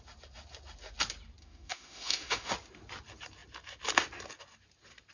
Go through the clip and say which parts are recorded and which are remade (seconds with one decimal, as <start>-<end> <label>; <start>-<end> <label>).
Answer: 0.0-1.4 recorded; 1.4-2.5 remade; 2.5-5.1 recorded